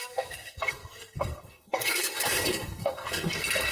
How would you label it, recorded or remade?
remade